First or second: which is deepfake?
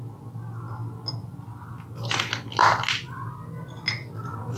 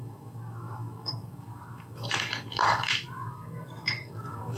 second